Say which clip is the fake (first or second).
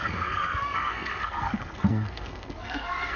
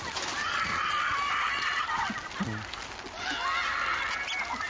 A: first